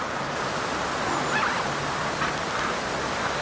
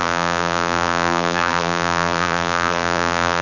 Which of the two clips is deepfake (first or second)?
second